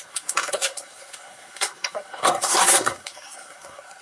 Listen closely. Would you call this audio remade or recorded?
remade